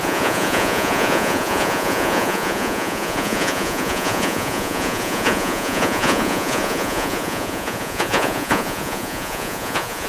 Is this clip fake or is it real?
fake